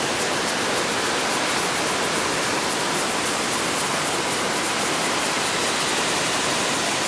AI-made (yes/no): no